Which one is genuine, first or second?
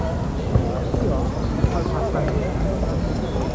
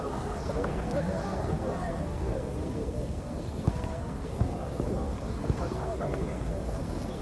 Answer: first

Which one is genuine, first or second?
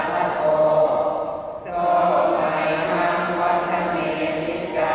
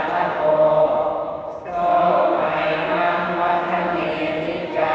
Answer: first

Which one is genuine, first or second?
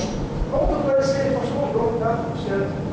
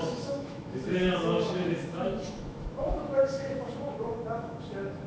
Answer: first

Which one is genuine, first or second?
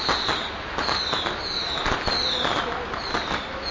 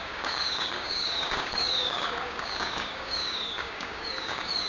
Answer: first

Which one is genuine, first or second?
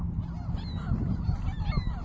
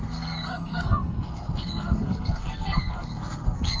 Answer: first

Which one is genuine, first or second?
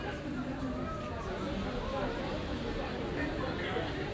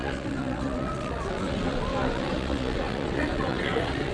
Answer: first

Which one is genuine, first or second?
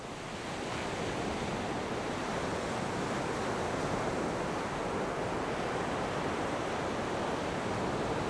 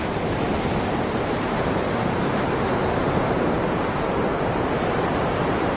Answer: first